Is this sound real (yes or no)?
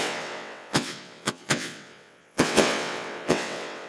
no